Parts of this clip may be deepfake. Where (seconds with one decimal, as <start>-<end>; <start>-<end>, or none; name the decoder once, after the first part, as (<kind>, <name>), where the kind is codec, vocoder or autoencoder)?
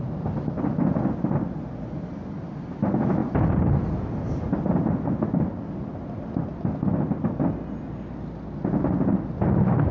none